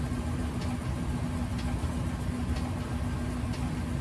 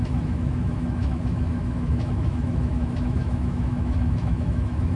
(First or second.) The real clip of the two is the first